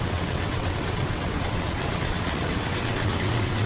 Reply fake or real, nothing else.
fake